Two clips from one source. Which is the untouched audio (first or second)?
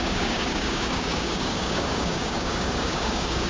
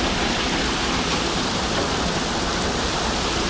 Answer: second